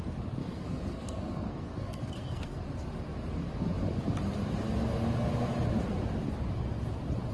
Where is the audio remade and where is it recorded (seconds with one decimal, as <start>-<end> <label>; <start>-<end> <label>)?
0.0-0.4 recorded; 0.4-2.6 remade; 2.6-7.3 recorded